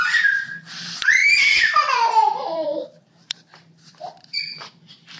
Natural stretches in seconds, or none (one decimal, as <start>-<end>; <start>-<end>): none